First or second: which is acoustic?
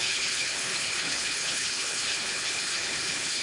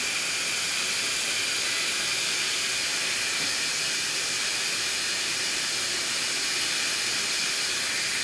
second